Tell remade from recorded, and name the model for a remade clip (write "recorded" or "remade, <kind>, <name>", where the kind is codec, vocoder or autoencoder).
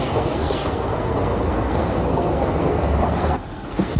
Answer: remade, codec, SNAC